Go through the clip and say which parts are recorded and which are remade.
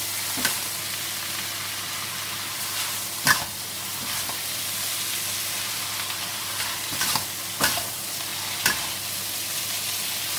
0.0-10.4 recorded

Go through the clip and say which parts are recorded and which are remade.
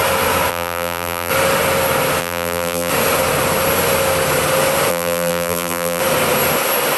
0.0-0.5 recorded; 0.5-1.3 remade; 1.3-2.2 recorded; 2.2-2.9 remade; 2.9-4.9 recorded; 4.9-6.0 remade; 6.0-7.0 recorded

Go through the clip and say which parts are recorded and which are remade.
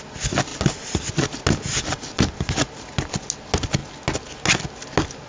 0.0-5.3 recorded